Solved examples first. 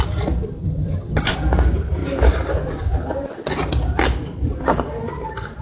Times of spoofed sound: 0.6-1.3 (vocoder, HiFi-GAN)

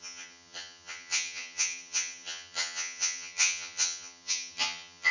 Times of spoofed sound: 0.0-5.1 (vocoder, HiFi-GAN)

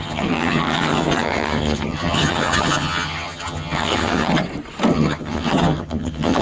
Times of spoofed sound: 0.0-4.4 (vocoder, HiFi-GAN); 4.9-6.4

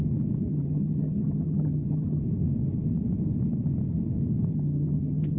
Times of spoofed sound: 0.5-2.2 (vocoder, HiFi-GAN); 4.5-5.4

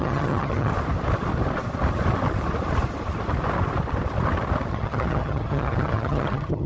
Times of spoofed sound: 0.0-0.7 (vocoder, HiFi-GAN); 4.7-6.7

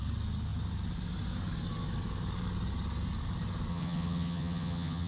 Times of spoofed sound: 3.7-5.1 (vocoder, HiFi-GAN)